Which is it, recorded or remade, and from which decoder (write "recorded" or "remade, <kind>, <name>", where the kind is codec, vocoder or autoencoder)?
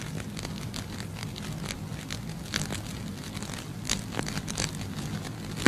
recorded